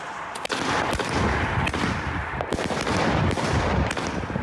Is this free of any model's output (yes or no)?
yes